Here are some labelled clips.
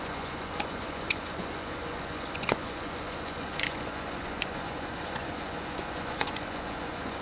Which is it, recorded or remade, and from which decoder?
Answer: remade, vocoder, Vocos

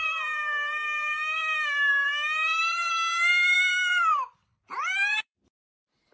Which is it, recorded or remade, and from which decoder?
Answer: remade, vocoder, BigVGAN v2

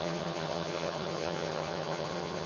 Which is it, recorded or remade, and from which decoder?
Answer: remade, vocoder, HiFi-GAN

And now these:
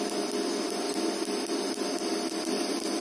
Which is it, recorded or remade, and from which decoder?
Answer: recorded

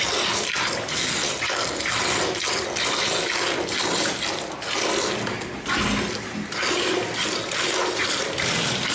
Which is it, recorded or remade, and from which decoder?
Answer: recorded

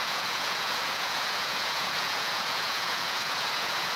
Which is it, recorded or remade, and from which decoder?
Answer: remade, vocoder, Vocos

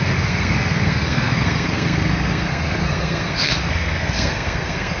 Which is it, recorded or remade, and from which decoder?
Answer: remade, codec, SNAC